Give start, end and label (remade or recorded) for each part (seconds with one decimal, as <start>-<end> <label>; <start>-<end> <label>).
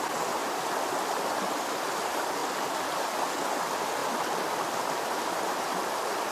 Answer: 0.0-6.3 recorded